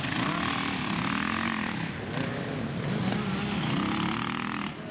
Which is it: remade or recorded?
recorded